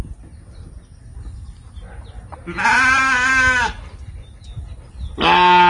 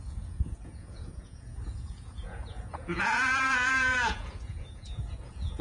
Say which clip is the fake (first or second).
second